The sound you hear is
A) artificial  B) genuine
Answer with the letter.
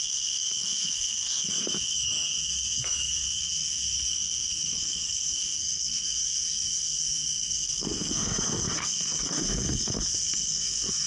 A